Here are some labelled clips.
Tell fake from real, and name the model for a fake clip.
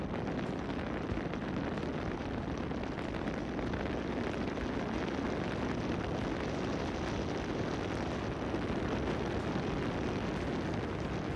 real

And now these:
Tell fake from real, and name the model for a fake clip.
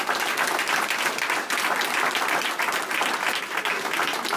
real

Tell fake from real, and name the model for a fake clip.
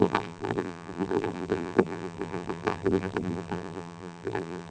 fake, vocoder, BigVGAN v2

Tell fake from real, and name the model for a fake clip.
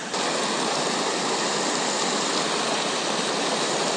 real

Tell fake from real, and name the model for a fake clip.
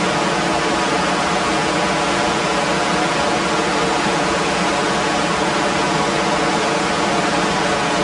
real